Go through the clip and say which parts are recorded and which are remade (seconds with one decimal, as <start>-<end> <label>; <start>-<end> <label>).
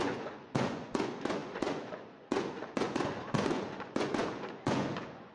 0.0-5.3 remade